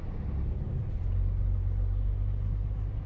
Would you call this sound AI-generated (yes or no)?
no